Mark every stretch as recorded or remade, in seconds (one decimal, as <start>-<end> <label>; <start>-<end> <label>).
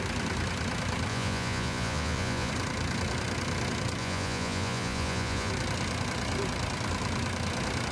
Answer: 0.0-1.1 recorded; 1.1-2.5 remade; 2.5-4.0 recorded; 4.0-5.5 remade; 5.5-7.9 recorded